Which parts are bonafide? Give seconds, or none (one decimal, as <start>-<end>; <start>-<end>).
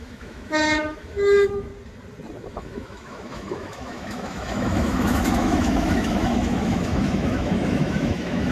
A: 1.7-2.5